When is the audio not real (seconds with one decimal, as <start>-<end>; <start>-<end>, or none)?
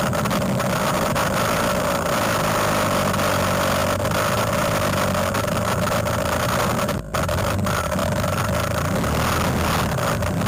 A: none